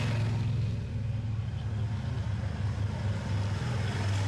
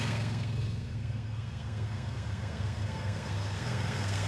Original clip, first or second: first